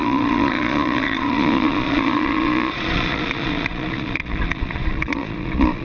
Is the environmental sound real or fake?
fake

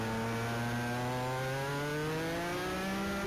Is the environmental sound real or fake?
real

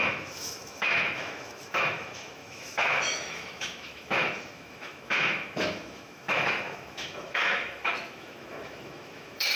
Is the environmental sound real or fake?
fake